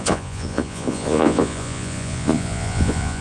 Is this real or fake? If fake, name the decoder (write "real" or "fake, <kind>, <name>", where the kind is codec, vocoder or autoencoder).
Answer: fake, vocoder, Vocos